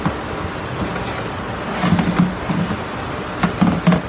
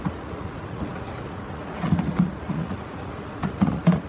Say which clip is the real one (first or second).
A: first